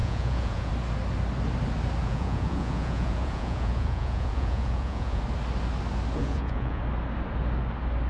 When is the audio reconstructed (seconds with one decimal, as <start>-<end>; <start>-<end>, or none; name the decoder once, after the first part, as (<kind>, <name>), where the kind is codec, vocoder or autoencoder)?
0.0-0.7 (vocoder, Vocos); 2.0-5.2; 6.2-6.8